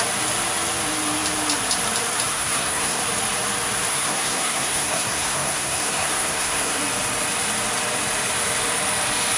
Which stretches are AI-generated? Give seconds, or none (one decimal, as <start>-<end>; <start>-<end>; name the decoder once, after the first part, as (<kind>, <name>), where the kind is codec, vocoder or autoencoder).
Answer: 2.3-3.0 (codec, SNAC); 3.9-6.8